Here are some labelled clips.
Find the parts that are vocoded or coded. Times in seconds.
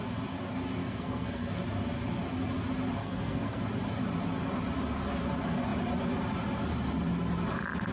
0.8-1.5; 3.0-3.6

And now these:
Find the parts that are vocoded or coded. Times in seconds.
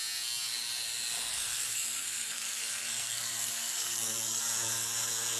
1.3-4.4